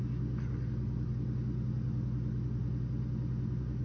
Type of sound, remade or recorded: recorded